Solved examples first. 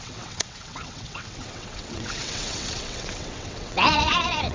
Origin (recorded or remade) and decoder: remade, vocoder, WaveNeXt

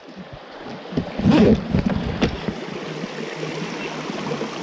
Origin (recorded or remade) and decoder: recorded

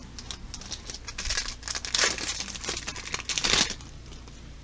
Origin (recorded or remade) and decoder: recorded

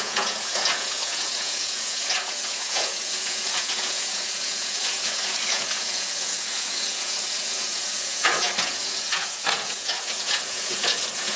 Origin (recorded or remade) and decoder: remade, vocoder, Vocos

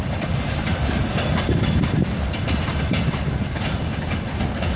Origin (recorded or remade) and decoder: remade, vocoder, BigVGAN v2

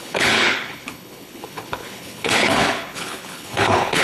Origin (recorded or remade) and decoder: remade, codec, HILCodec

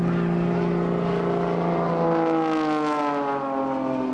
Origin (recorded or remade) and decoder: recorded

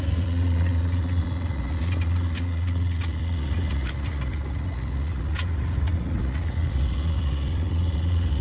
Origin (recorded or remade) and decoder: remade, vocoder, Vocos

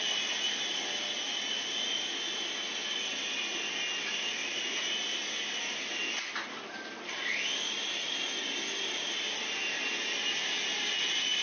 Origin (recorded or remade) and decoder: recorded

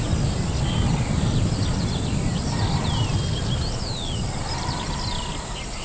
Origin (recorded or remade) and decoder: recorded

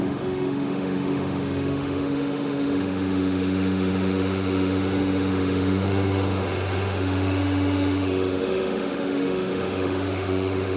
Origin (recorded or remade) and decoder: remade, autoencoder, DAC-VAE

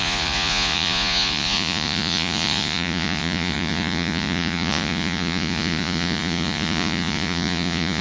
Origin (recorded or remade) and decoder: remade, vocoder, Vocos